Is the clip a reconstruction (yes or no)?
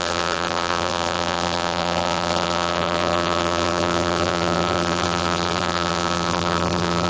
yes